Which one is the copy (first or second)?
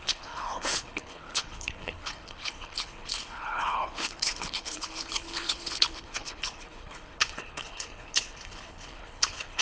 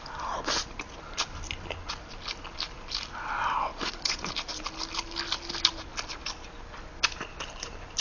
first